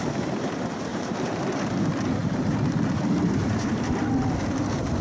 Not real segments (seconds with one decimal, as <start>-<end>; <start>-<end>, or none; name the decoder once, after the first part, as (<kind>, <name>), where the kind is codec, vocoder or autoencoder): 0.9-1.4 (vocoder, BigVGAN v2); 2.2-3.8